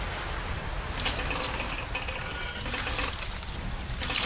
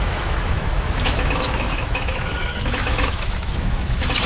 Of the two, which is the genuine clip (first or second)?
first